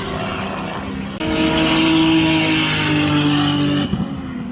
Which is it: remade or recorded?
recorded